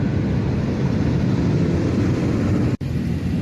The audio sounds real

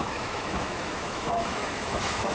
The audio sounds fake